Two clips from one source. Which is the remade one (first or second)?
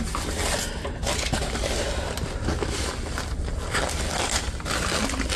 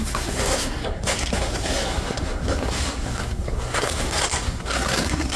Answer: second